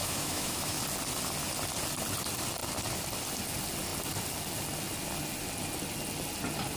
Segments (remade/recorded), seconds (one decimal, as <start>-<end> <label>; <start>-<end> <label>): 0.0-0.8 remade; 0.8-6.8 recorded